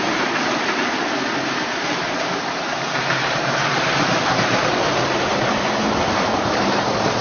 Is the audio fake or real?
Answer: fake